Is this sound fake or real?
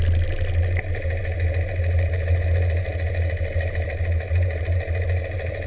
real